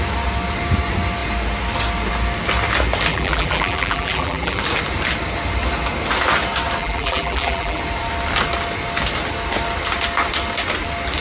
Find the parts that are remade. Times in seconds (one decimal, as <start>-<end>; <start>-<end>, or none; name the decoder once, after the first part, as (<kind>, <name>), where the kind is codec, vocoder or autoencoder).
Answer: 3.1-4.6 (vocoder, BigVGAN v2); 6.8-7.8